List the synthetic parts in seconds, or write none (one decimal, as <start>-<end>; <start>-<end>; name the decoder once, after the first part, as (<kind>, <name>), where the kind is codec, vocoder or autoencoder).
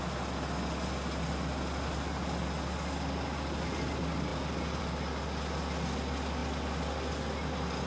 none